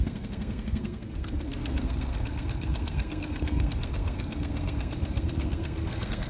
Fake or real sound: fake